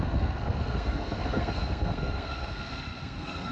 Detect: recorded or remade remade